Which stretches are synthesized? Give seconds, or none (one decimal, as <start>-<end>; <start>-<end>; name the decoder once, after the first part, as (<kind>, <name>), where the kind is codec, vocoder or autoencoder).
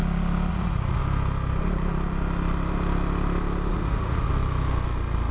0.5-1.0 (vocoder, Vocos); 3.7-4.3